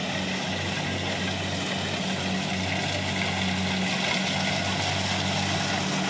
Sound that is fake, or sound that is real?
real